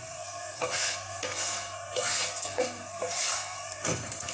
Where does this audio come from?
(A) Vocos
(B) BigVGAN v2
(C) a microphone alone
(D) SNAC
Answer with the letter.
D